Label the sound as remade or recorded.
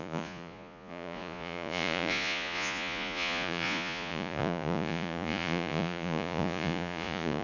remade